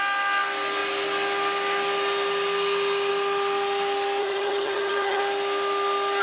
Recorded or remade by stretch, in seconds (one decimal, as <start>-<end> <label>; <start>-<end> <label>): 0.0-4.2 recorded; 4.2-5.2 remade; 5.2-6.2 recorded

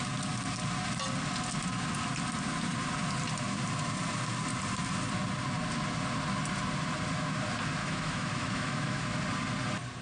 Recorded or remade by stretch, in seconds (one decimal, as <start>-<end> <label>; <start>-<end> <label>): 0.0-7.8 recorded; 7.8-9.0 remade; 9.0-10.0 recorded

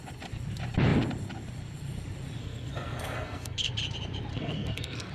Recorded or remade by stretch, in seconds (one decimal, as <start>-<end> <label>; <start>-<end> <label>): 0.0-2.4 recorded; 2.4-3.7 remade; 3.7-4.3 recorded; 4.3-5.1 remade

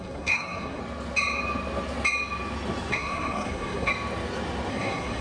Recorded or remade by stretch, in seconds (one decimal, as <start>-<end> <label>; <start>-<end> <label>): 0.0-0.8 remade; 0.8-2.9 recorded; 2.9-3.9 remade; 3.9-4.7 recorded; 4.7-5.2 remade